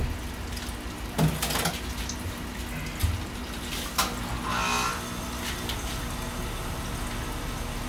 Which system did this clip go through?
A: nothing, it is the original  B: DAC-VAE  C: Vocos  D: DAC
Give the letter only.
A